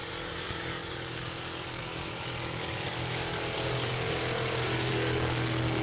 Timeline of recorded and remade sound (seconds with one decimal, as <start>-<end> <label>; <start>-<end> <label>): 0.0-4.2 remade; 4.2-4.9 recorded; 4.9-5.8 remade